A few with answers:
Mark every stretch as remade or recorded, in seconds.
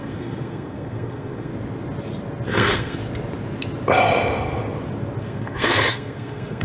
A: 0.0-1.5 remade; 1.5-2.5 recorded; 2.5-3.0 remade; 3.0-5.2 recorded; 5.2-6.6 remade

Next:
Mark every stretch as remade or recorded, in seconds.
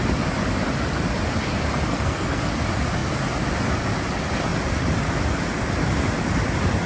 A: 0.0-1.9 recorded; 1.9-2.4 remade; 2.4-6.9 recorded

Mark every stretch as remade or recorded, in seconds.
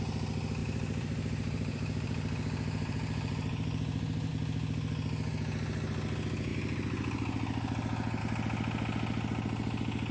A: 0.0-0.6 recorded; 0.6-4.3 remade; 4.3-10.1 recorded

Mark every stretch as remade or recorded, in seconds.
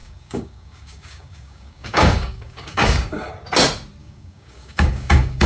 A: 0.0-3.3 remade; 3.3-4.0 recorded; 4.0-5.5 remade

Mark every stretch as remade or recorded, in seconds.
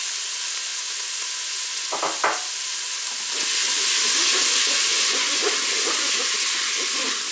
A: 0.0-0.7 recorded; 0.7-2.0 remade; 2.0-4.9 recorded; 4.9-5.4 remade; 5.4-7.3 recorded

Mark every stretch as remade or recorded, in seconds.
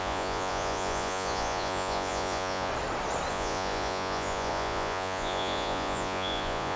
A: 0.0-2.7 remade; 2.7-3.3 recorded; 3.3-6.8 remade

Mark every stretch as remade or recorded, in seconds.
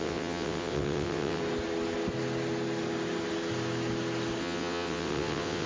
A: 0.0-1.4 remade; 1.4-4.4 recorded; 4.4-5.7 remade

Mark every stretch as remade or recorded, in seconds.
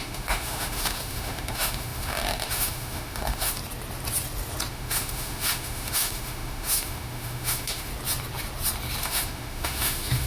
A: 0.0-3.6 remade; 3.6-4.7 recorded; 4.7-7.9 remade; 7.9-9.0 recorded; 9.0-10.3 remade